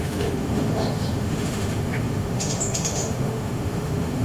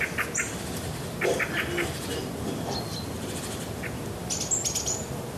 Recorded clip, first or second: second